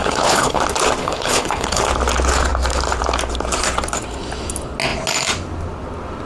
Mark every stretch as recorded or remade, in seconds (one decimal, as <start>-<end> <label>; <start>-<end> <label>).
0.0-0.6 remade; 0.6-1.0 recorded; 1.0-1.8 remade; 1.8-6.3 recorded

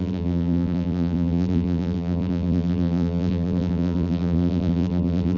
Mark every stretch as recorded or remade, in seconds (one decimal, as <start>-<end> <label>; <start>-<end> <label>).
0.0-5.4 remade

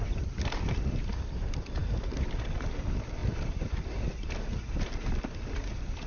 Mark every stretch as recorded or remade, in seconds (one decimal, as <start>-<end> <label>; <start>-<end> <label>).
0.0-1.8 recorded; 1.8-2.3 remade; 2.3-3.2 recorded; 3.2-3.7 remade; 3.7-6.1 recorded

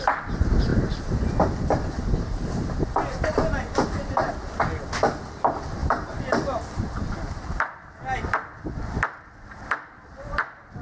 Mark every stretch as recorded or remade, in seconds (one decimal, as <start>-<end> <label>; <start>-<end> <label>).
0.0-0.7 recorded; 0.7-4.3 remade; 4.3-5.8 recorded; 5.8-7.6 remade; 7.6-10.8 recorded

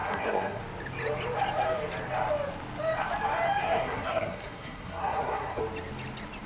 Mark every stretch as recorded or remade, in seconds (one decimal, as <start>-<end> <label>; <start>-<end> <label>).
0.0-0.6 remade; 0.6-3.6 recorded; 3.6-5.6 remade; 5.6-6.5 recorded

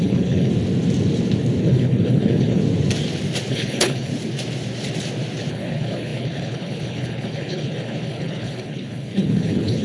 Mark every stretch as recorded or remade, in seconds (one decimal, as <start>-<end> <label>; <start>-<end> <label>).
0.0-0.5 remade; 0.5-1.6 recorded; 1.6-2.6 remade; 2.6-3.5 recorded; 3.5-4.1 remade; 4.1-5.5 recorded; 5.5-9.8 remade